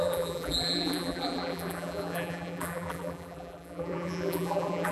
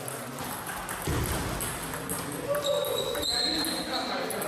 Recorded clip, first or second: second